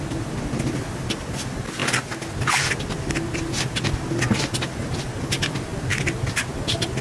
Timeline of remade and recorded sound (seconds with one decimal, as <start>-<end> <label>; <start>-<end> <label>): 0.0-7.0 recorded